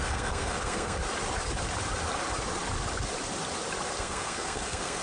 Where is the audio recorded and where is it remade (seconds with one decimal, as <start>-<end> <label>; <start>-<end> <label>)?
0.0-1.0 remade; 1.0-4.0 recorded; 4.0-5.0 remade